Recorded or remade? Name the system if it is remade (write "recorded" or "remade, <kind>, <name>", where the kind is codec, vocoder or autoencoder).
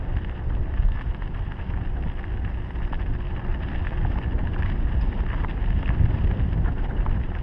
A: recorded